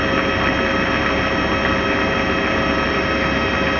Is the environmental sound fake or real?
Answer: real